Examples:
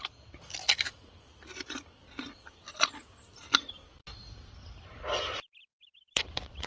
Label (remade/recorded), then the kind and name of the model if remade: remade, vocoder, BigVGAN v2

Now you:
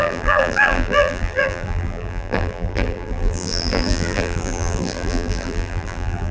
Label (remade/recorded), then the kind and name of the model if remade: remade, vocoder, BigVGAN v2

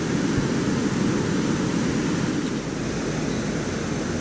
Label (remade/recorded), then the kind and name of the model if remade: recorded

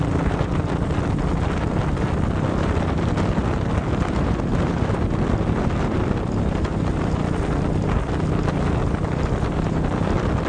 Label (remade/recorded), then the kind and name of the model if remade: recorded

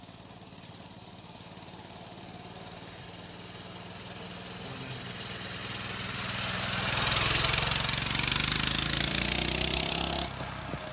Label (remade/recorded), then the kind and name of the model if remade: recorded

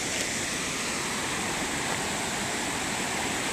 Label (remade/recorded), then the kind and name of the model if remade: recorded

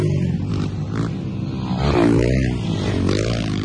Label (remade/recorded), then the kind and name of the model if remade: recorded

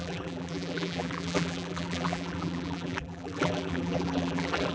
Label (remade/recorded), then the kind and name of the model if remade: remade, vocoder, BigVGAN v2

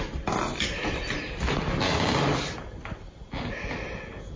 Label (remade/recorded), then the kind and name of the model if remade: recorded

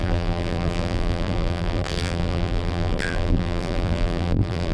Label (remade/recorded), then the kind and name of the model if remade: remade, vocoder, BigVGAN v2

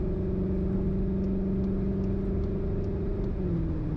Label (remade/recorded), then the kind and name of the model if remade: recorded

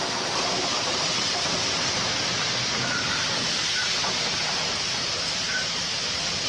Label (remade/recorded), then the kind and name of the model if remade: remade, vocoder, BigVGAN v2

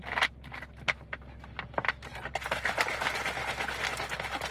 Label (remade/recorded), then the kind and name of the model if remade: recorded